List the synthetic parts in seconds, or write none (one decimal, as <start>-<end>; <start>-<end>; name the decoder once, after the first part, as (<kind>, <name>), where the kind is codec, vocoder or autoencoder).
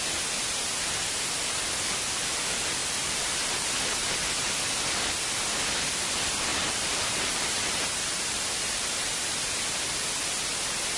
2.8-3.7 (vocoder, BigVGAN v2); 6.5-9.1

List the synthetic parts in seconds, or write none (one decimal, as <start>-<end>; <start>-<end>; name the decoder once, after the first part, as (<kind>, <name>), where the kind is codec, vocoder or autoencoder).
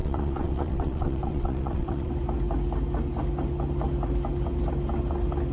0.0-2.1 (vocoder, WaveNeXt)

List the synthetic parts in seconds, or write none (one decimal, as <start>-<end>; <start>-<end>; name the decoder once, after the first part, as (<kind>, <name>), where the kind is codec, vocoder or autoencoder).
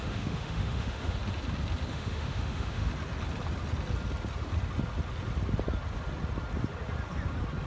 0.0-1.2 (autoencoder, DAC-VAE); 1.9-2.9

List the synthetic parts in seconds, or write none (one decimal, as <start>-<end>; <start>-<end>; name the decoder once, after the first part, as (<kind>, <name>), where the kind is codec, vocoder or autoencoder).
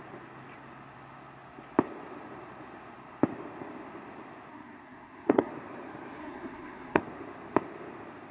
4.5-5.5 (codec, SNAC); 6.2-7.0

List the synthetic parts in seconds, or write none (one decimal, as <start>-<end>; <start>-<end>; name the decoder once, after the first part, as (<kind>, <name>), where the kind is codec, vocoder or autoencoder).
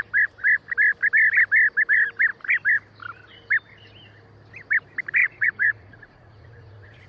5.2-7.1 (vocoder, Vocos)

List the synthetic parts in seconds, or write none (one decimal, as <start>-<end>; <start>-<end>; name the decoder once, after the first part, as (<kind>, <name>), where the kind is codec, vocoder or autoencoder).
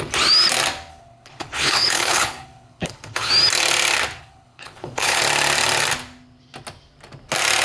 0.9-3.3 (codec, HILCodec); 4.2-5.2